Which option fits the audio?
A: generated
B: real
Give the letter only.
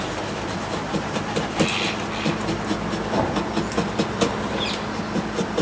B